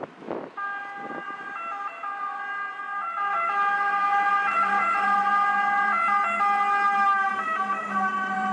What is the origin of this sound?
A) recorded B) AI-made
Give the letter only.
A